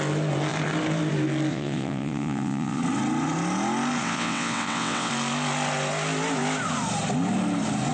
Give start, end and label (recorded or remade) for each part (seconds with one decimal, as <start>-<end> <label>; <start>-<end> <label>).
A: 0.0-1.5 recorded; 1.5-2.8 remade; 2.8-4.0 recorded; 4.0-5.1 remade; 5.1-7.9 recorded

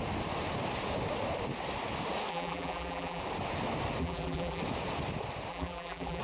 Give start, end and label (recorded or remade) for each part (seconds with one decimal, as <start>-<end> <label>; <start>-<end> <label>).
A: 0.0-2.3 recorded; 2.3-3.2 remade; 3.2-4.0 recorded; 4.0-4.6 remade; 4.6-5.5 recorded; 5.5-6.2 remade

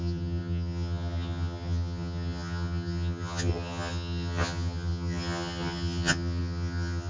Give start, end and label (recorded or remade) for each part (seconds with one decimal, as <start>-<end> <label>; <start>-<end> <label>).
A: 0.0-7.1 remade

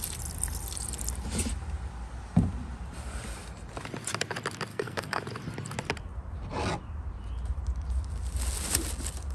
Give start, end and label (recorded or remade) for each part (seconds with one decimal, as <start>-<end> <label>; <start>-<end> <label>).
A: 0.0-4.7 recorded; 4.7-5.2 remade; 5.2-9.3 recorded

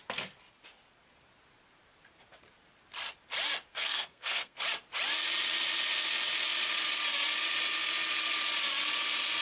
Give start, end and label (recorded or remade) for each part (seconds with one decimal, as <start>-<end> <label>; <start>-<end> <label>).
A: 0.0-3.7 recorded; 3.7-4.6 remade; 4.6-9.4 recorded

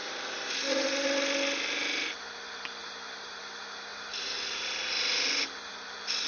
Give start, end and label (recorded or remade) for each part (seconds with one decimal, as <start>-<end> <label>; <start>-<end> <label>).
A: 0.0-0.5 remade; 0.5-2.8 recorded; 2.8-3.4 remade; 3.4-3.9 recorded; 3.9-5.7 remade; 5.7-6.3 recorded

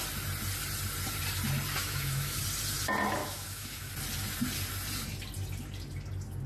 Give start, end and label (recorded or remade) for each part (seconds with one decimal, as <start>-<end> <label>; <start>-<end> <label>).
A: 0.0-1.8 recorded; 1.8-2.4 remade; 2.4-3.2 recorded; 3.2-3.9 remade; 3.9-6.5 recorded

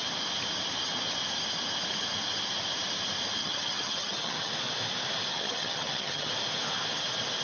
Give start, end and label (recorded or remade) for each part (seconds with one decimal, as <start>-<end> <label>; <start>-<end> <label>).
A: 0.0-3.4 recorded; 3.4-4.5 remade; 4.5-5.3 recorded; 5.3-6.3 remade; 6.3-7.4 recorded